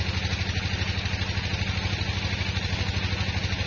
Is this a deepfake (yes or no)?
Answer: no